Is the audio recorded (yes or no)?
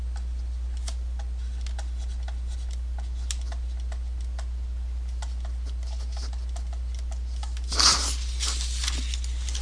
yes